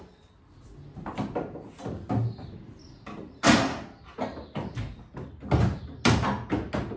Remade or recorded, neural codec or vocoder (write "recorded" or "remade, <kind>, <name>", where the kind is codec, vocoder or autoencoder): recorded